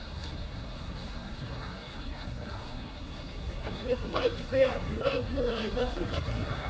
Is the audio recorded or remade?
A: remade